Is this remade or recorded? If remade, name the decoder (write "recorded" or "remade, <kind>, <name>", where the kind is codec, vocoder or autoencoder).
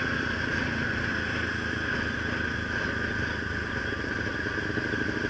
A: recorded